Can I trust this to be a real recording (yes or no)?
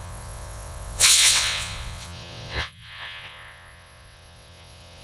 no